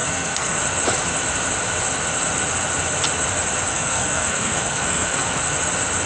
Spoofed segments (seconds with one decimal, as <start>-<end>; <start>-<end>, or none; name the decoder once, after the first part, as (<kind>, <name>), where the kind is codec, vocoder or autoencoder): 0.0-0.6 (codec, SNAC); 3.7-5.4